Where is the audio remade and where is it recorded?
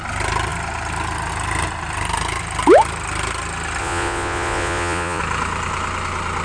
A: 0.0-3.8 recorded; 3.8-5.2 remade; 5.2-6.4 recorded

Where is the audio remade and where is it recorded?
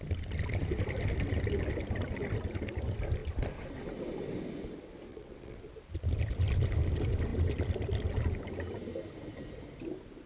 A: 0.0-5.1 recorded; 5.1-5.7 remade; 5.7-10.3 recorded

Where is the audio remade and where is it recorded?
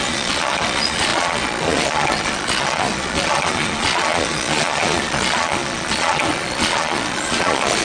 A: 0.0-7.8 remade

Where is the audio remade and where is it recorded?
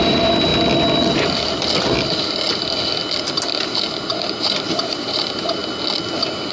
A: 0.0-0.5 remade; 0.5-4.4 recorded; 4.4-5.6 remade; 5.6-6.5 recorded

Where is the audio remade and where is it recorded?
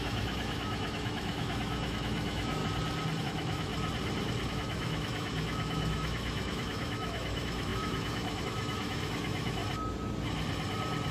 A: 0.0-2.6 remade; 2.6-3.2 recorded; 3.2-3.7 remade; 3.7-4.5 recorded; 4.5-9.6 remade; 9.6-11.1 recorded